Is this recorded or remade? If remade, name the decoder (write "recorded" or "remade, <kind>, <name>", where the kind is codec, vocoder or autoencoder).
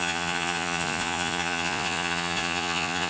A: remade, vocoder, Vocos